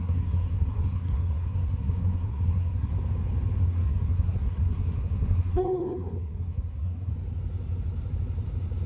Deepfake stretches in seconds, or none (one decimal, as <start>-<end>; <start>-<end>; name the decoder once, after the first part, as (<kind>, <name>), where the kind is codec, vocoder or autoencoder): 0.0-2.9 (codec, SNAC); 3.6-7.1